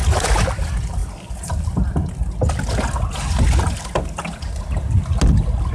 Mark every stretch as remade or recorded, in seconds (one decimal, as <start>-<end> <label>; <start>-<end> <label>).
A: 0.0-5.7 recorded